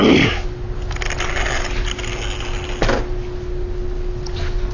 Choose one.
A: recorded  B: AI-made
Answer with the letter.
A